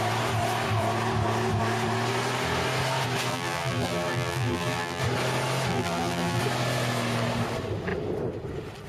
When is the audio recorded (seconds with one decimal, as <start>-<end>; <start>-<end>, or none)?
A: 0.0-3.3; 5.0-5.7; 6.4-8.9